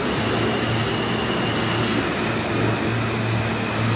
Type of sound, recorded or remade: recorded